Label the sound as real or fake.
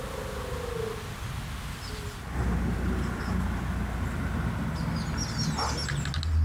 real